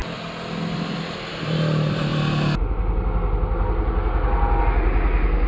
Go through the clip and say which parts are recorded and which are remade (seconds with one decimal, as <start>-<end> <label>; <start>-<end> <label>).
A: 0.0-5.5 recorded